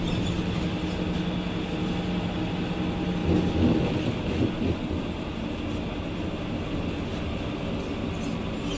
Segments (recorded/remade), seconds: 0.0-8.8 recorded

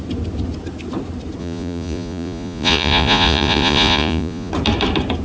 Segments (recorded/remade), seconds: 0.0-1.4 recorded; 1.4-4.5 remade; 4.5-5.2 recorded

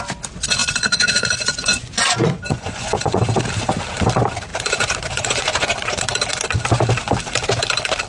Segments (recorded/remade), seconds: 0.0-0.6 recorded; 0.6-3.2 remade; 3.2-4.5 recorded; 4.5-6.0 remade; 6.0-8.1 recorded

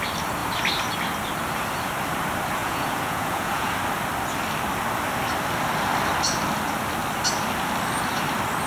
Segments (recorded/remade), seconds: 0.0-2.6 recorded; 2.6-3.7 remade; 3.7-8.7 recorded